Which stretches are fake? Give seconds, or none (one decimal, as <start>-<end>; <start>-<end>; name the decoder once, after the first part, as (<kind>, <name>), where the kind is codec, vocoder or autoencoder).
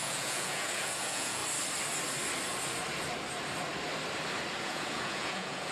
0.0-1.4 (vocoder, Vocos); 4.6-5.7